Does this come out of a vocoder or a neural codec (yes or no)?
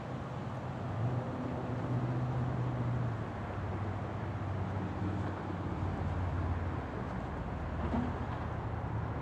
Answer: no